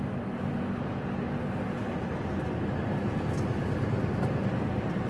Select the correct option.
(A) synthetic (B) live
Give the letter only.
B